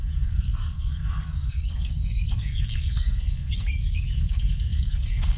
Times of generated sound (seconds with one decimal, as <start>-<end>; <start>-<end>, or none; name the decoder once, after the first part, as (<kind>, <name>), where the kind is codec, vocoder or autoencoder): 0.0-5.4 (codec, SNAC)